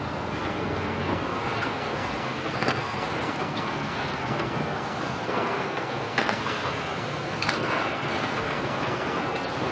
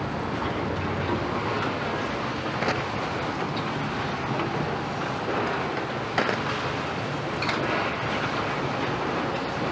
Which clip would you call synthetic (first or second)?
first